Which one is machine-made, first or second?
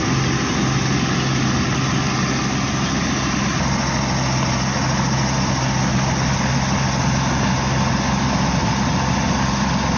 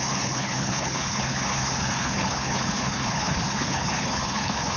second